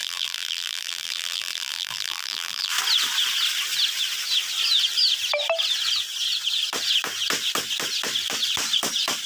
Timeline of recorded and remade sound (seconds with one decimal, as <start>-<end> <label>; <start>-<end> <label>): 0.0-2.7 remade; 2.7-9.3 recorded

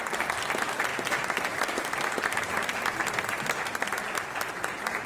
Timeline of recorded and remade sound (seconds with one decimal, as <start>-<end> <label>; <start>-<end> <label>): 0.0-5.1 recorded

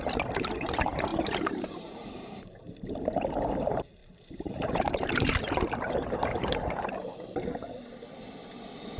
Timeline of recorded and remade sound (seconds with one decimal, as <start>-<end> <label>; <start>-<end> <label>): 0.0-1.1 recorded; 1.1-2.9 remade; 2.9-4.0 recorded; 4.0-6.9 remade; 6.9-9.0 recorded

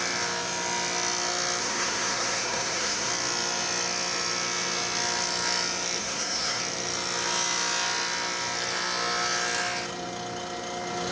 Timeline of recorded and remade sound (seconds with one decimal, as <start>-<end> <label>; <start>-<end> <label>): 0.0-1.6 recorded; 1.6-3.1 remade; 3.1-6.0 recorded; 6.0-6.6 remade; 6.6-11.1 recorded

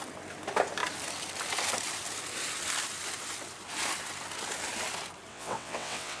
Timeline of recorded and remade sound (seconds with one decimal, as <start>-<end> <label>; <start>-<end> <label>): 0.0-5.3 recorded; 5.3-6.2 remade